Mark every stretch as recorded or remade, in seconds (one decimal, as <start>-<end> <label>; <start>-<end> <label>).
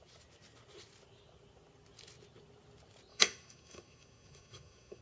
0.0-3.1 recorded; 3.1-5.0 remade